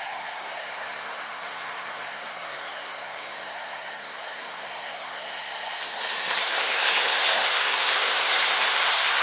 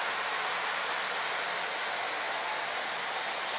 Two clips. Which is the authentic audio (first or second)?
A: second